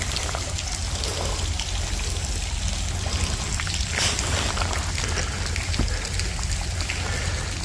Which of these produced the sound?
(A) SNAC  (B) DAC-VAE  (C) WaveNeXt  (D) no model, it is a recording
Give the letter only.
D